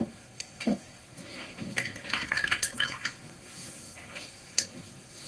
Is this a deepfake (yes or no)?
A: yes